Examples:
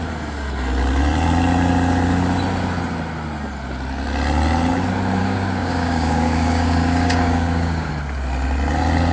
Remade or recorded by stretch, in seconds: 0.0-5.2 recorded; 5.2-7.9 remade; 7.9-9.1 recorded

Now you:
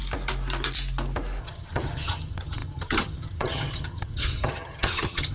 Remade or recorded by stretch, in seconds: 0.0-1.4 recorded; 1.4-5.3 remade